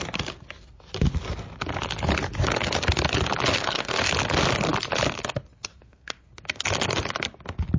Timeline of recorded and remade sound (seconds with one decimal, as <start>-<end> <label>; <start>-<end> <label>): 0.0-3.5 recorded; 3.5-4.0 remade; 4.0-5.7 recorded; 5.7-6.3 remade; 6.3-7.8 recorded